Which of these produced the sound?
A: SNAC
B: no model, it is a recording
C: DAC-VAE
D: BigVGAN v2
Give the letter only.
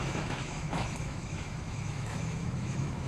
C